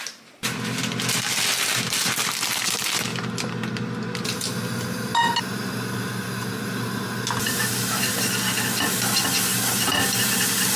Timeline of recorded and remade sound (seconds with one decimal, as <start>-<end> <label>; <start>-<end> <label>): 0.0-10.8 recorded